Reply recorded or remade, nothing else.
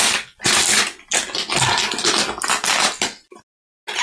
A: recorded